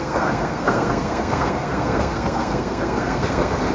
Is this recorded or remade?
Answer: remade